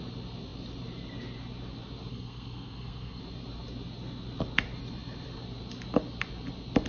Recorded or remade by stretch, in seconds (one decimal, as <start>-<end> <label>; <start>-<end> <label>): 0.0-2.1 recorded; 2.1-3.2 remade; 3.2-6.9 recorded